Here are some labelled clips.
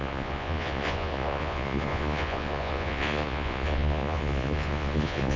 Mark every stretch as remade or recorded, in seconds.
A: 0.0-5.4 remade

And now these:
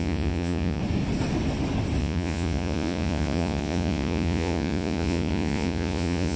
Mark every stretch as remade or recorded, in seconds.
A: 0.0-0.8 remade; 0.8-2.0 recorded; 2.0-6.4 remade

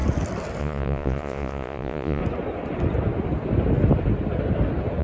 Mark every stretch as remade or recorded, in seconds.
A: 0.0-0.6 recorded; 0.6-2.2 remade; 2.2-5.0 recorded

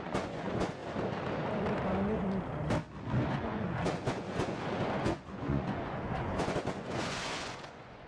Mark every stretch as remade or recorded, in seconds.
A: 0.0-0.8 remade; 0.8-3.3 recorded; 3.3-8.1 remade

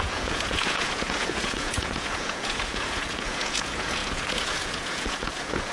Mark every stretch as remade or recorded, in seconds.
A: 0.0-5.7 remade